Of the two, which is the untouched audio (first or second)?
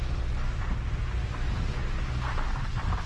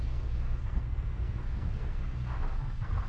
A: first